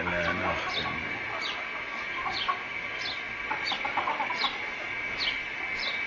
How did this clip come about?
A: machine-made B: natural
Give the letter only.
B